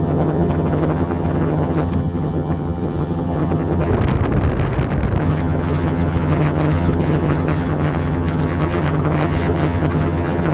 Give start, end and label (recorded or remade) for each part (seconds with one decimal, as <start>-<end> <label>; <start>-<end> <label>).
0.0-3.9 remade; 3.9-5.2 recorded; 5.2-10.5 remade